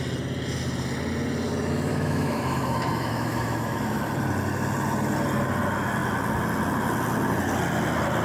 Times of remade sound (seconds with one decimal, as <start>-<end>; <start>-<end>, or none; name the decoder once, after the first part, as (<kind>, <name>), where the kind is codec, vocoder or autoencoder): 1.9-4.0 (autoencoder, DAC-VAE)